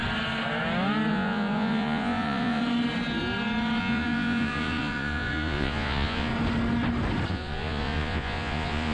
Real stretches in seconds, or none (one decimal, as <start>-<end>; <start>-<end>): 0.0-1.1; 2.6-3.8; 6.3-7.3